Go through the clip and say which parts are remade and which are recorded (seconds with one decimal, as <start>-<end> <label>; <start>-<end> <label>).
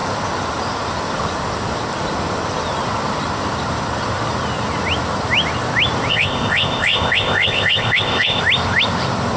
0.0-6.1 recorded; 6.1-8.4 remade; 8.4-9.4 recorded